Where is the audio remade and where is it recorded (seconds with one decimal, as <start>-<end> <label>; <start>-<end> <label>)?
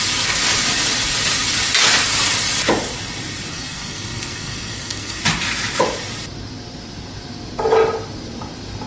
0.0-3.5 recorded; 3.5-5.2 remade; 5.2-8.9 recorded